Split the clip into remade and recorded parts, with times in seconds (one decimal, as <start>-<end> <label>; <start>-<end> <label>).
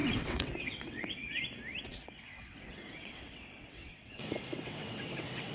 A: 0.0-1.4 remade; 1.4-1.9 recorded; 1.9-5.5 remade